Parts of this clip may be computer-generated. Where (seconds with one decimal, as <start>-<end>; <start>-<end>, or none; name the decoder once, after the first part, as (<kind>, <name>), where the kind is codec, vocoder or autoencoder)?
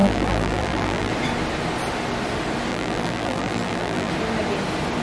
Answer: 0.0-1.1 (vocoder, BigVGAN v2); 2.7-4.1